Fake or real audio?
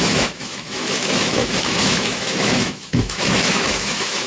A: fake